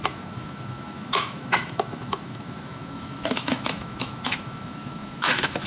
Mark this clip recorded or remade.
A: remade